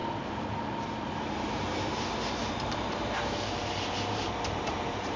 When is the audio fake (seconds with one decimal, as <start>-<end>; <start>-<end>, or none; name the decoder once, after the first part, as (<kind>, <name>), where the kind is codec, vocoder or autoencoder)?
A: 0.0-5.2 (vocoder, BigVGAN v2)